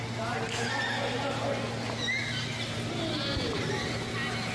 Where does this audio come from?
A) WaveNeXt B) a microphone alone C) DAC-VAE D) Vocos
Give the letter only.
B